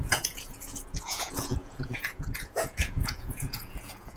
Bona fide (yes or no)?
no